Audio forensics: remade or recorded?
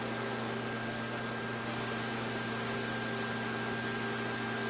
recorded